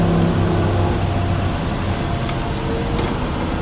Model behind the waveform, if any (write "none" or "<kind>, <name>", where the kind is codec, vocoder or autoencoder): none